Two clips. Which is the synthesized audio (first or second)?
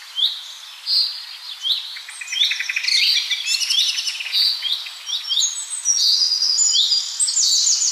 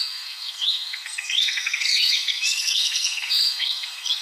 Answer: second